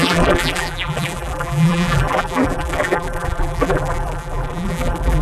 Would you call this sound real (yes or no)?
no